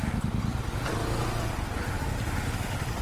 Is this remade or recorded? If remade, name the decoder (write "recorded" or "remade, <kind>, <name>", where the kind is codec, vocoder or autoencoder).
recorded